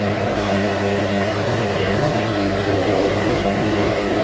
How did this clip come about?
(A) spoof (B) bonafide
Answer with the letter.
A